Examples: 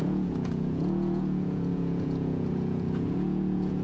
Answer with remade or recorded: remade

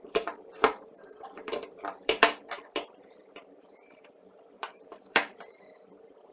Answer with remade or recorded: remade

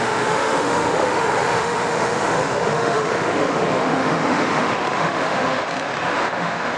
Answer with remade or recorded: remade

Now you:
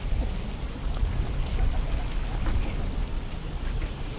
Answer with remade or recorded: recorded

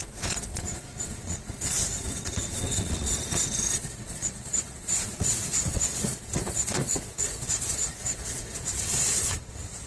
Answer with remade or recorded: remade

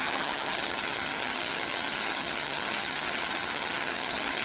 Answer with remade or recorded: remade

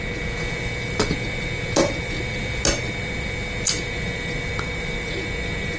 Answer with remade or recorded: recorded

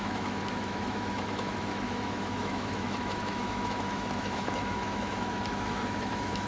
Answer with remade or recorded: remade